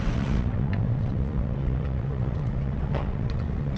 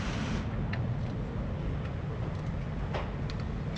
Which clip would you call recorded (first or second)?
second